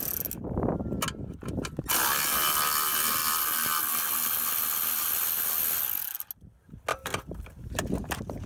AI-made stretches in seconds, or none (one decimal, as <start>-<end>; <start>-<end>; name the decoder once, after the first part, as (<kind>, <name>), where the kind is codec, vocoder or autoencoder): none